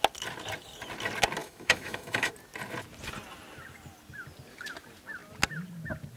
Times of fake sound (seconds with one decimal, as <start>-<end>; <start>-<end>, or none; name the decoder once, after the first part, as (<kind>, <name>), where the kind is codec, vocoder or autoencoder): 1.4-2.3 (autoencoder, DAC-VAE)